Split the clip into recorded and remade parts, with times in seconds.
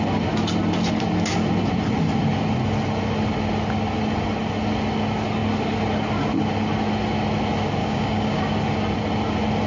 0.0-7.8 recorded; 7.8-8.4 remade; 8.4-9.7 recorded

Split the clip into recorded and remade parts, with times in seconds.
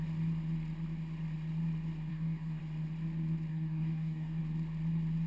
0.0-2.1 recorded; 2.1-2.6 remade; 2.6-3.5 recorded; 3.5-4.4 remade; 4.4-5.3 recorded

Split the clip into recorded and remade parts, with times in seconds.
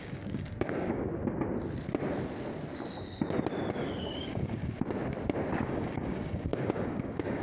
0.0-1.2 remade; 1.2-3.8 recorded; 3.8-4.6 remade; 4.6-5.6 recorded; 5.6-7.4 remade